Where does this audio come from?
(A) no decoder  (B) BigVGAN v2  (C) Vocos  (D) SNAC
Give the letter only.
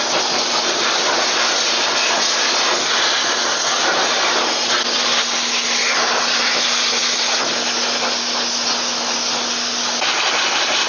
A